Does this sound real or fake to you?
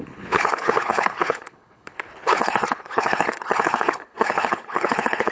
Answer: fake